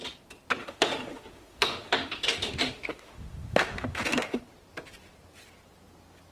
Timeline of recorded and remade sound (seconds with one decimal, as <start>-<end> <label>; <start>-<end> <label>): 0.0-0.6 recorded; 0.6-4.4 remade; 4.4-6.3 recorded